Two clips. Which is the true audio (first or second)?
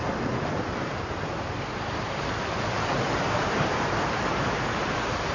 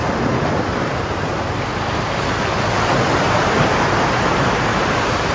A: second